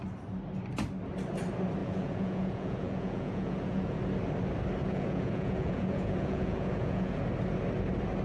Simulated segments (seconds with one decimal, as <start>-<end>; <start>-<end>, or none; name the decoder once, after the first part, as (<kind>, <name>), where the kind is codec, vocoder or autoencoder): 1.8-4.0 (vocoder, Vocos); 4.8-7.2